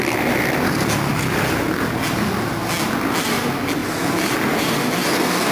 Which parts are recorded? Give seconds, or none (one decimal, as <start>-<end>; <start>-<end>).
0.0-5.5